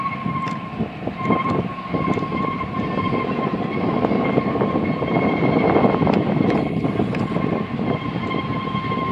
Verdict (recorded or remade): recorded